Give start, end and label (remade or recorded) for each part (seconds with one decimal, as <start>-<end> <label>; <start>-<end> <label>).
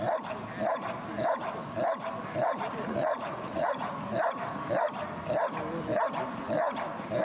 0.0-2.8 recorded; 2.8-3.9 remade; 3.9-7.2 recorded